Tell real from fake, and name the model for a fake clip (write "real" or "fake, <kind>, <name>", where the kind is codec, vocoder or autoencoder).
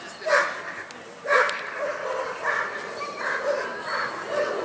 real